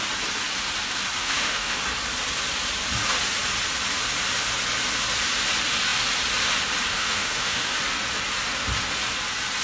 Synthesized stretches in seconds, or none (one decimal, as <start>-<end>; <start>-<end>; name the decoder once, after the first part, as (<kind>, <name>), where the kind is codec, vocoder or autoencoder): 1.2-1.8 (autoencoder, DAC-VAE); 6.9-7.8

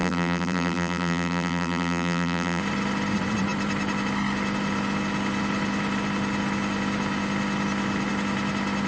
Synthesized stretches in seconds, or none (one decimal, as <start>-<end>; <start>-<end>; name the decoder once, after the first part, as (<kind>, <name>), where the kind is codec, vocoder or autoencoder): 0.0-2.6 (vocoder, BigVGAN v2)

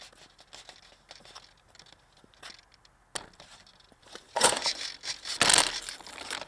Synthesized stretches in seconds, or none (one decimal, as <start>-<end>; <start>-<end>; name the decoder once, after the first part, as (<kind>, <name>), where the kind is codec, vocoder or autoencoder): 4.0-4.8 (vocoder, Vocos)

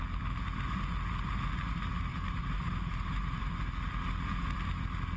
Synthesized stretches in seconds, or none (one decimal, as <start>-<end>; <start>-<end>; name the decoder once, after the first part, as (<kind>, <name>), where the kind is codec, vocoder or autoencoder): 2.1-3.5 (vocoder, BigVGAN v2)

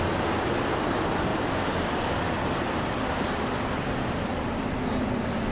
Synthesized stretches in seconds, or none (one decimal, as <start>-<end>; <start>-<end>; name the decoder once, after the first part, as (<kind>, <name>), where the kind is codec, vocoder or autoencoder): none